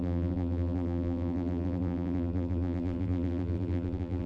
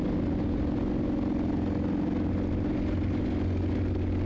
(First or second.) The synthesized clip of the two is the first